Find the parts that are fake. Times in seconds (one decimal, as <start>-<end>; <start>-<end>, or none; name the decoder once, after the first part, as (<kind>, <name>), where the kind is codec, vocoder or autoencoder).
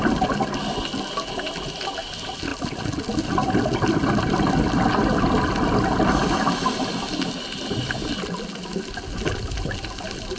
none